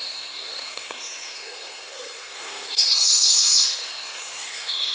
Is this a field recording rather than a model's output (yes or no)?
no